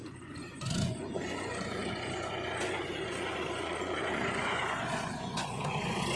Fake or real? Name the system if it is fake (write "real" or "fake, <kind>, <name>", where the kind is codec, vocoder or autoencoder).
fake, vocoder, Vocos